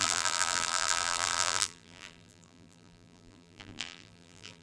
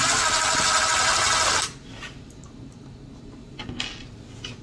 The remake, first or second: first